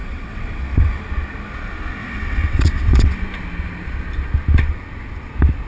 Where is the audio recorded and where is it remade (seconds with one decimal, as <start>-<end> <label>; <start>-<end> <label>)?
0.0-1.0 remade; 1.0-2.0 recorded; 2.0-3.2 remade; 3.2-5.7 recorded